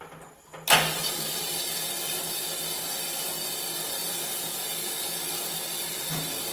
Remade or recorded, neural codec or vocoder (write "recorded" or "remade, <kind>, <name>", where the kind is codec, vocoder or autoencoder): recorded